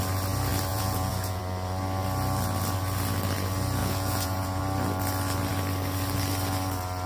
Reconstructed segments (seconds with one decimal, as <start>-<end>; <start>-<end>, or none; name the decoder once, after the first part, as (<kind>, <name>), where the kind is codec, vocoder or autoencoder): 0.7-1.4 (vocoder, Vocos); 3.8-4.6